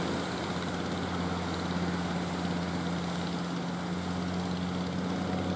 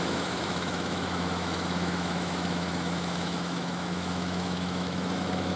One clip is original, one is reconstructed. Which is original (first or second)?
first